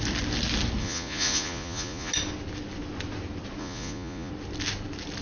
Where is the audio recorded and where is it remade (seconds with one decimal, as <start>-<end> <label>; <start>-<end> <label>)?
0.0-0.8 recorded; 0.8-2.1 remade; 2.1-3.6 recorded; 3.6-4.3 remade; 4.3-5.2 recorded